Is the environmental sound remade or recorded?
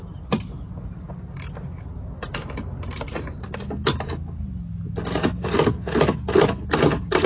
recorded